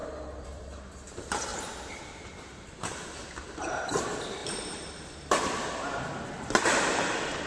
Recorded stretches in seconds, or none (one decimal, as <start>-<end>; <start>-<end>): 0.9-1.5; 4.0-4.4; 6.0-7.5